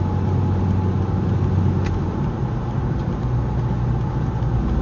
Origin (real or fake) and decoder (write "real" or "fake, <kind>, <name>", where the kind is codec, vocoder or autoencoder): real